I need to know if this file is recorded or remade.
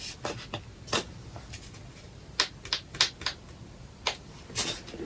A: recorded